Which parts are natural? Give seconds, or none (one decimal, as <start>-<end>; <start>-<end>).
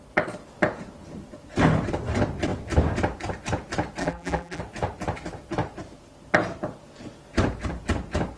0.0-4.0; 4.6-8.4